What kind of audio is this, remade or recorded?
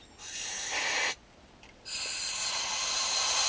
recorded